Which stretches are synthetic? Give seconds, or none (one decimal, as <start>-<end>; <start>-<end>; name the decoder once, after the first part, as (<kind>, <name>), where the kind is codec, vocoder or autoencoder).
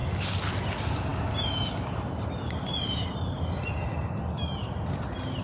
none